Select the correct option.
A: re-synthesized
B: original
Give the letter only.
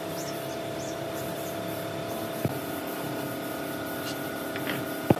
A